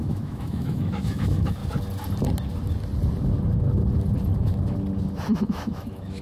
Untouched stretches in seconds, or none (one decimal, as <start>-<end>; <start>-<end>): 1.6-5.3